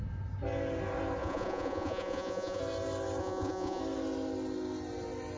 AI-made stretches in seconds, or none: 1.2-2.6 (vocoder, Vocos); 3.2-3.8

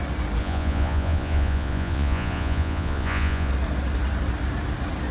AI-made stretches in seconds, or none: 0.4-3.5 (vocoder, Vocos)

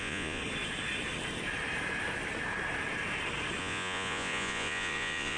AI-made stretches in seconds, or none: 0.0-0.4 (vocoder, Vocos); 3.6-5.4